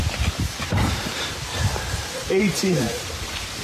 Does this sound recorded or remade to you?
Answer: remade